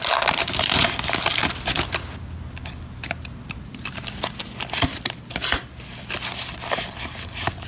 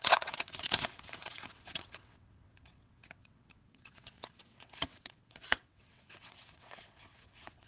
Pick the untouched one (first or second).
first